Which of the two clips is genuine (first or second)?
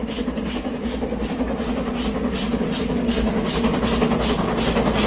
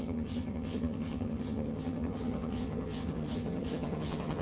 first